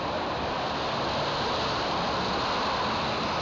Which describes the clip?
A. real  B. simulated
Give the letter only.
A